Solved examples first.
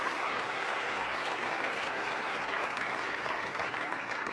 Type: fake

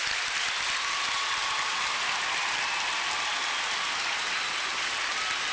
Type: real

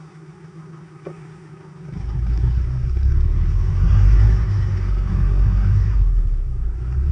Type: fake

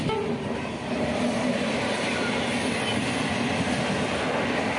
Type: real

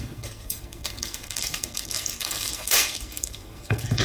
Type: fake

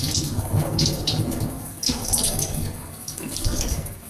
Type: fake